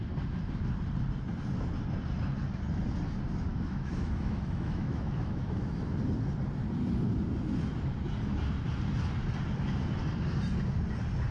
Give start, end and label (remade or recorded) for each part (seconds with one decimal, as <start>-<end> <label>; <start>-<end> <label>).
0.0-3.5 recorded; 3.5-5.7 remade; 5.7-11.3 recorded